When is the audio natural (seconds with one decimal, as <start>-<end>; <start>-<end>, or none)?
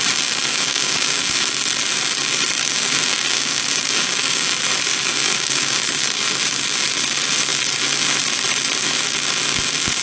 0.0-0.5; 1.3-2.6; 4.5-5.2; 6.2-10.0